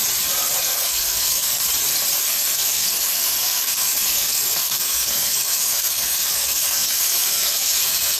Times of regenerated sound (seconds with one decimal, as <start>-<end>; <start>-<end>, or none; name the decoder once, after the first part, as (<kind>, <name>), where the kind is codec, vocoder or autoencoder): 0.6-1.6 (codec, SNAC); 2.2-8.2

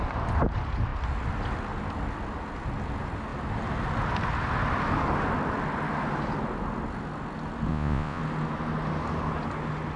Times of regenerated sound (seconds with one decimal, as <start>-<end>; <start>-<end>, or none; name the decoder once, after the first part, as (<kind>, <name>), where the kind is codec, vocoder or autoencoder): 7.7-8.2 (vocoder, Vocos)

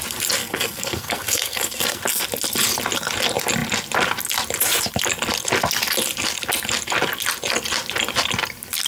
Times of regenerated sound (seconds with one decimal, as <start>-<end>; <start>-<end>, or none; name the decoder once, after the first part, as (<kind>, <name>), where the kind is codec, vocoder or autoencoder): 0.4-2.0 (codec, SNAC)